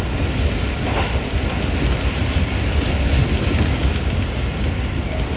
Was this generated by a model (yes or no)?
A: no